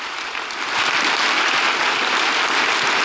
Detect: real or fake real